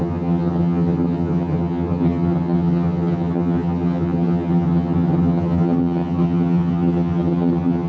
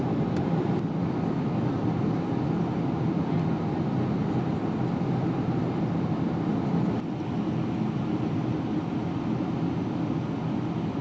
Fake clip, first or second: first